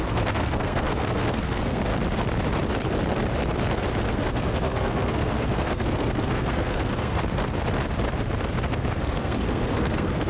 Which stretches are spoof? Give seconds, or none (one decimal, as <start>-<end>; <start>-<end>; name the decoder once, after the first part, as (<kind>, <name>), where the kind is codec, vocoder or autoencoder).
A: 0.0-1.9 (codec, SNAC); 4.1-7.2; 8.6-10.3